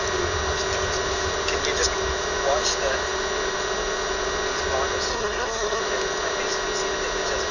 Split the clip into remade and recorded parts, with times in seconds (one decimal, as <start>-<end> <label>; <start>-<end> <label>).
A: 0.0-5.1 recorded; 5.1-5.8 remade; 5.8-7.5 recorded